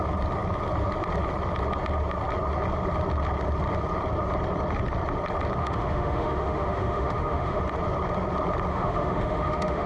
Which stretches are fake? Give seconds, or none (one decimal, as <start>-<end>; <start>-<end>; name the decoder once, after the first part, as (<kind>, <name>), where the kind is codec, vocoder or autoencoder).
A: 5.6-7.6 (autoencoder, DAC-VAE); 8.7-9.9